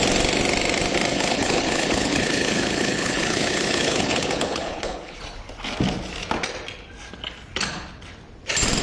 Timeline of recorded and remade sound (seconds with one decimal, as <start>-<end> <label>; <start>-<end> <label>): 0.0-1.1 recorded; 1.1-5.2 remade; 5.2-8.8 recorded